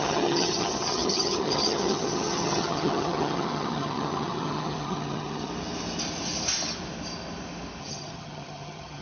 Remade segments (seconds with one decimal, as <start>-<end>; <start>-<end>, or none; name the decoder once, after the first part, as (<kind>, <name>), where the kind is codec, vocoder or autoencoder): 0.0-5.5 (vocoder, HiFi-GAN); 7.8-9.0